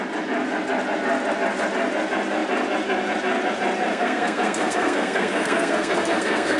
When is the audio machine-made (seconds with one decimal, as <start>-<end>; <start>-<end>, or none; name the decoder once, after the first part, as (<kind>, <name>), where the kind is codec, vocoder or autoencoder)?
3.9-6.6 (codec, SNAC)